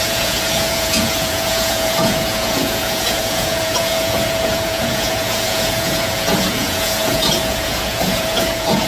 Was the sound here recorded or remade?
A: remade